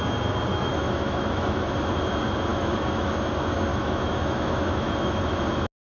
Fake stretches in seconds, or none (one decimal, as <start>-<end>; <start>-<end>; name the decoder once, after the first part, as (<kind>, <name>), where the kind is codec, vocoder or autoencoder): 0.5-1.7 (autoencoder, DAC-VAE); 2.5-3.1; 3.7-5.4